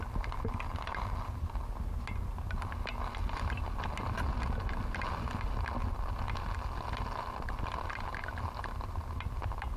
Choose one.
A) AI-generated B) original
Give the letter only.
B